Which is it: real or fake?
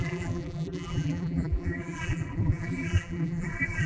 fake